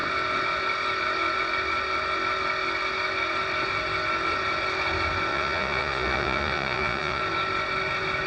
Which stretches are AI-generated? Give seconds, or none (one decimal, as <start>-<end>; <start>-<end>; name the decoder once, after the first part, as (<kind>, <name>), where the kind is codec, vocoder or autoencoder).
5.3-7.2 (vocoder, Vocos)